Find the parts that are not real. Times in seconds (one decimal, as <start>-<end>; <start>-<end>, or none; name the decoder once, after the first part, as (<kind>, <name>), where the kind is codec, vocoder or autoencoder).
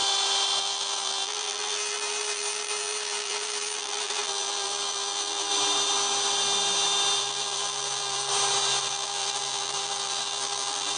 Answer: 0.6-5.5 (vocoder, BigVGAN v2); 7.2-8.3; 8.8-11.0